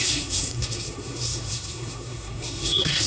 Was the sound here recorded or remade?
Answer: remade